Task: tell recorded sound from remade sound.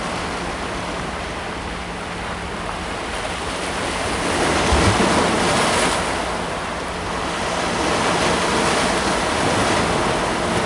recorded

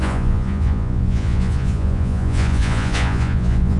remade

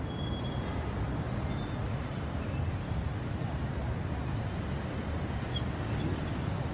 recorded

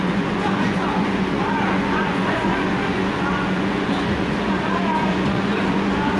remade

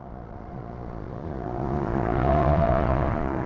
remade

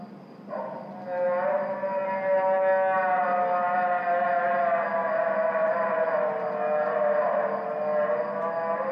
recorded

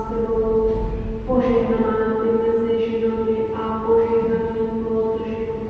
recorded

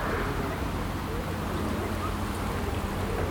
recorded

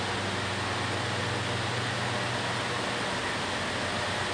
recorded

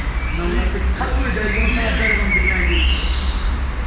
recorded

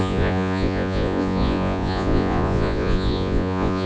remade